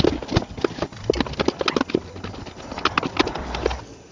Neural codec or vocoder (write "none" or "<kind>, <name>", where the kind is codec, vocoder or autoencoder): none